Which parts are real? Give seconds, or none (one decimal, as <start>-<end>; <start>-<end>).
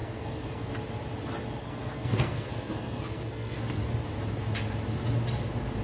0.7-1.6; 3.8-5.8